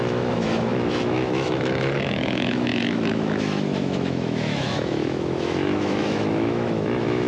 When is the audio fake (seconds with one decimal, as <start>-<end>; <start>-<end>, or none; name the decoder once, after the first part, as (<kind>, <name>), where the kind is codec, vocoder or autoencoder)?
0.0-7.3 (autoencoder, DAC-VAE)